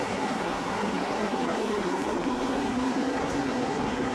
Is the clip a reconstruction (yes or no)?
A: yes